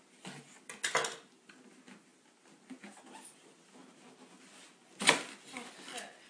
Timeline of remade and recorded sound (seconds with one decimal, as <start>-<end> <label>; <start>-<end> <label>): 0.0-6.3 recorded